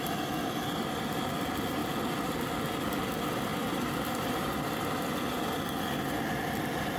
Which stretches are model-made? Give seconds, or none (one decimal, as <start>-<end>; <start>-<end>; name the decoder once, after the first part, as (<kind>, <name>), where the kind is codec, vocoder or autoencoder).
3.5-4.8 (vocoder, BigVGAN v2)